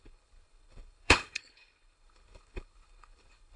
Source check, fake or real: fake